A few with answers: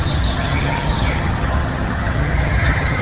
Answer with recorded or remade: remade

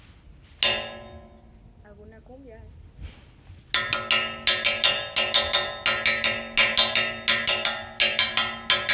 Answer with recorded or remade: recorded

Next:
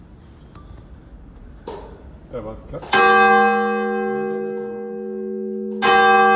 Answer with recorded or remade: recorded